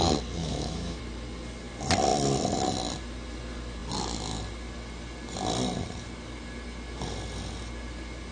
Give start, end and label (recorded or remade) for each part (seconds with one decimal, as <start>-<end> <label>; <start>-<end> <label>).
0.0-0.4 recorded; 0.4-1.0 remade; 1.0-8.3 recorded